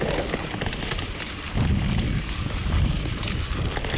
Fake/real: real